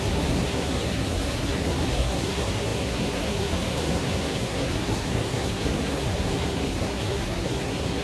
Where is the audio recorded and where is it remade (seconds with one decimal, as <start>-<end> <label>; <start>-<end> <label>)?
0.0-8.0 remade